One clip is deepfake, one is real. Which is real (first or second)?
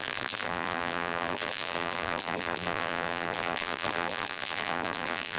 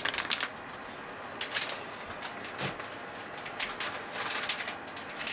second